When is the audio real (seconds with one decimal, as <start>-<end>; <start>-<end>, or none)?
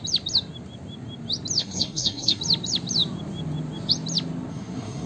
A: 0.0-1.6; 2.4-4.5